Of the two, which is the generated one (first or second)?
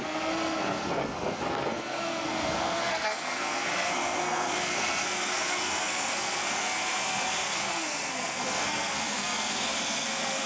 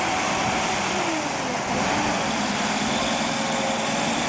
first